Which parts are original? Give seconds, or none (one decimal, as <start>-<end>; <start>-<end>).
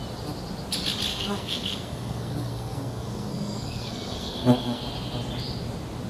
0.0-1.1; 4.8-6.1